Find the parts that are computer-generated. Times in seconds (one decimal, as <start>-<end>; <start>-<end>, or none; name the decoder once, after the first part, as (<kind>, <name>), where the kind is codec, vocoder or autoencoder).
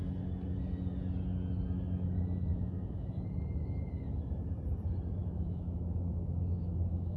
2.5-3.1 (autoencoder, DAC-VAE); 5.2-7.2